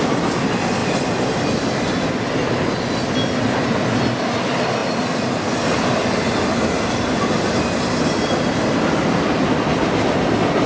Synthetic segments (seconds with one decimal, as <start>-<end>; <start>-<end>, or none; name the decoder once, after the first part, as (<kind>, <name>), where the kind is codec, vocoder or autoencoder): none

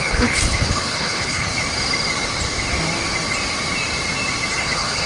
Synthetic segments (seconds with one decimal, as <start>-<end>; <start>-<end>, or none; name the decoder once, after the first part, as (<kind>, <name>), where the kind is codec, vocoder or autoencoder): 0.0-1.5 (codec, HILCodec); 4.6-5.1

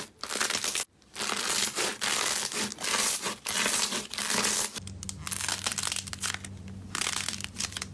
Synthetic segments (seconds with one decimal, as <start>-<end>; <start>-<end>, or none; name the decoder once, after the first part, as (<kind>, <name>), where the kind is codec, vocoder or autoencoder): none